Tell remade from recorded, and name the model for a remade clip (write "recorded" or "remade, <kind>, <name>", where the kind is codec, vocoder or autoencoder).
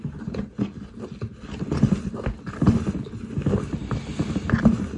recorded